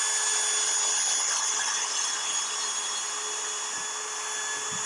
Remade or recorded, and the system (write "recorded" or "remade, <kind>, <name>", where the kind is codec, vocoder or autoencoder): recorded